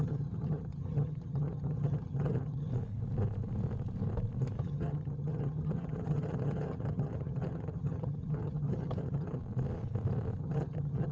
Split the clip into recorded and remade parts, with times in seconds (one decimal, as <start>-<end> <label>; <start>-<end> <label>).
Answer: 0.0-2.7 remade; 2.7-4.6 recorded; 4.6-9.4 remade; 9.4-10.4 recorded; 10.4-11.1 remade